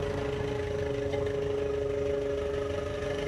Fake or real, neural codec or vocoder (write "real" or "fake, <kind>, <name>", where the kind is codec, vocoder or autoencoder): real